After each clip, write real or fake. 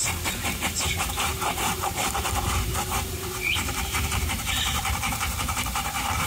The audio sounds fake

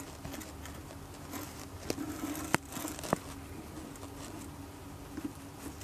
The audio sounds real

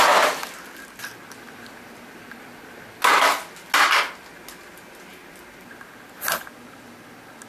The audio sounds real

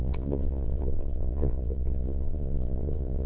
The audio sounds fake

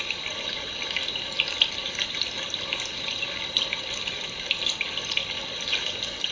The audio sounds real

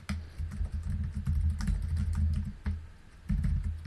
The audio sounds real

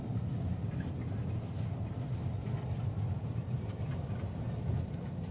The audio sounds real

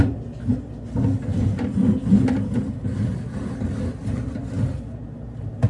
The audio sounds real